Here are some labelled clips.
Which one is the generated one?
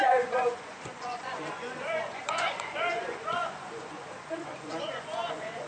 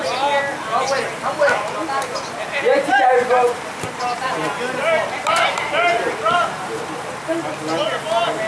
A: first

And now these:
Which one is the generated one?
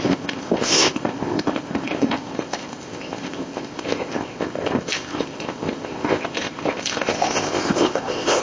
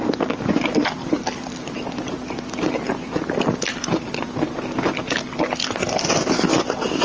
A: first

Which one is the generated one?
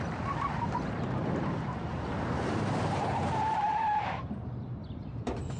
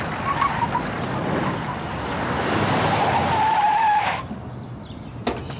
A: first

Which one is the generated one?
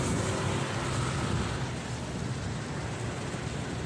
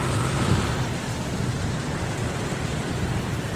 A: second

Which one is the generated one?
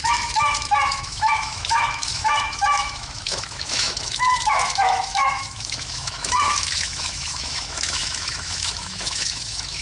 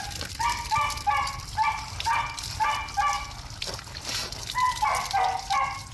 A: first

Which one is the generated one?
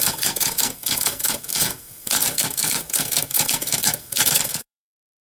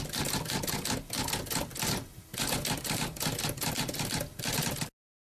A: first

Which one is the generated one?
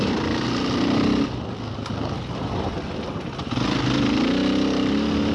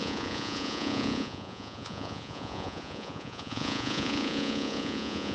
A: second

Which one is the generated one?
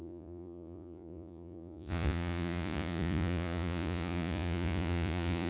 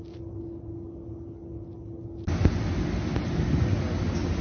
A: first